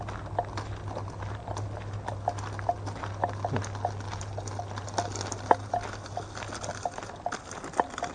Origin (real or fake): real